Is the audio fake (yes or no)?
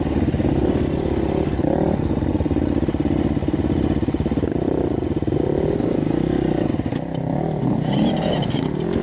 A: no